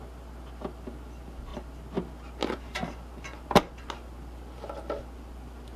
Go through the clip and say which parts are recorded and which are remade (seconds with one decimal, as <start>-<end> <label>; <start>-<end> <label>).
0.0-5.8 recorded